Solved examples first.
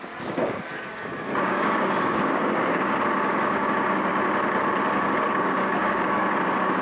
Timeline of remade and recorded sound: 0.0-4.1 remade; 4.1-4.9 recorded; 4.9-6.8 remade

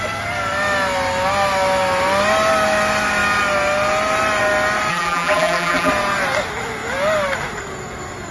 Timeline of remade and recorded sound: 0.0-4.9 recorded; 4.9-5.9 remade; 5.9-8.3 recorded

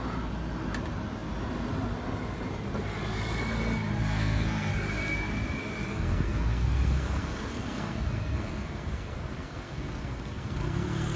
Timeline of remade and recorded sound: 0.0-4.0 recorded; 4.0-4.7 remade; 4.7-5.9 recorded; 5.9-11.2 remade

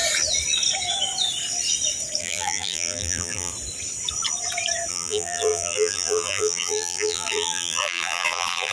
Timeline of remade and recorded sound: 0.0-2.2 recorded; 2.2-3.5 remade; 3.5-4.9 recorded; 4.9-8.7 remade

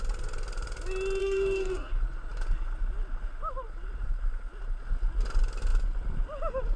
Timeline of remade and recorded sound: 0.0-1.2 recorded; 1.2-1.9 remade; 1.9-6.8 recorded

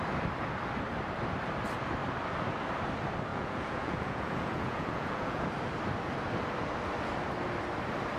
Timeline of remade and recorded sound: 0.0-3.3 recorded; 3.3-5.4 remade; 5.4-8.2 recorded

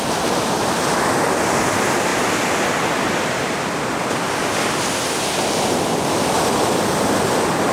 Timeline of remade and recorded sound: 0.0-7.7 recorded

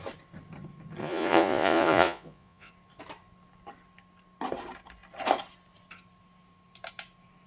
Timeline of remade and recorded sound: 0.0-1.0 recorded; 1.0-2.7 remade; 2.7-7.5 recorded